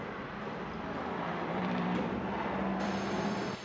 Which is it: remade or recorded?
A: remade